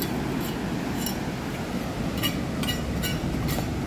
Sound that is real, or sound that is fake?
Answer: real